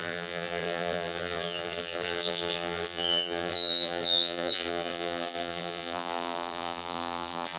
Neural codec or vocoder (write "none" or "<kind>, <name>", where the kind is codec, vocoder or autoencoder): vocoder, BigVGAN v2